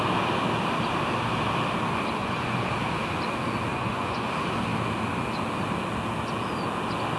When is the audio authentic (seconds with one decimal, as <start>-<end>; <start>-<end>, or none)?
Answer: 0.0-2.2; 2.7-3.7; 4.3-7.2